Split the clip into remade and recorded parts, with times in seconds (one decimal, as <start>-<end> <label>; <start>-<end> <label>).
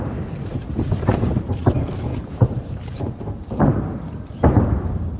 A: 0.0-5.2 remade